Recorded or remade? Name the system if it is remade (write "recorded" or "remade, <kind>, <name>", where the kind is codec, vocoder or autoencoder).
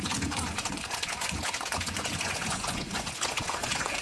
remade, vocoder, Vocos